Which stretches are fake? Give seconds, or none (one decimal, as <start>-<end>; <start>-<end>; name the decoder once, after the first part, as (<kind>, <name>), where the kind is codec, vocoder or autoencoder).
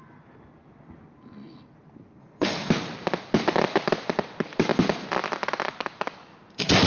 2.2-2.7 (codec, SNAC)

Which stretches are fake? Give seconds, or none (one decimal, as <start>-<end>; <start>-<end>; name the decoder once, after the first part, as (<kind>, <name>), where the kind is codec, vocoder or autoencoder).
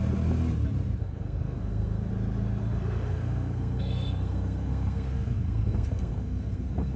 1.0-2.1 (codec, SNAC); 2.6-7.0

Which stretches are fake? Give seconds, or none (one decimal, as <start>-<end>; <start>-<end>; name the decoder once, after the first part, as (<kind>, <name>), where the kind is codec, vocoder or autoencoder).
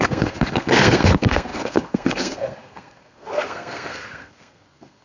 0.0-5.0 (codec, SNAC)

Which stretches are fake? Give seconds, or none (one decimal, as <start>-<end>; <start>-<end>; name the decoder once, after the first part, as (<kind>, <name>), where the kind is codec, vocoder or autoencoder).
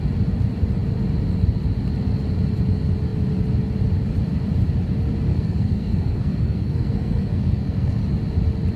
5.3-8.0 (codec, SNAC)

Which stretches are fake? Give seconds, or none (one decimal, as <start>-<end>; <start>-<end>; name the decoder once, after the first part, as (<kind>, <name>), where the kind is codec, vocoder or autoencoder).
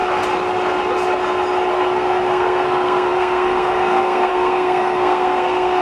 1.7-5.8 (codec, SNAC)